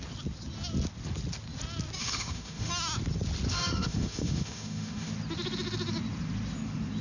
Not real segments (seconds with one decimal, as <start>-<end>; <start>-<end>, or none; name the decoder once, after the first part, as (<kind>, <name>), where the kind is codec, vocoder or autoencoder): 2.0-2.7 (autoencoder, DAC-VAE); 3.5-5.1